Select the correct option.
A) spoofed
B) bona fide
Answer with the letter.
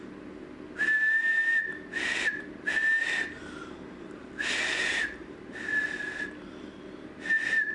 B